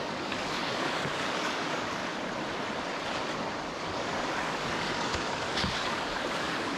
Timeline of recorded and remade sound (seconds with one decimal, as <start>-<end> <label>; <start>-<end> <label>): 0.0-2.0 remade; 2.0-3.6 recorded; 3.6-6.8 remade